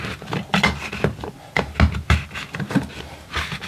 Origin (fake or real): real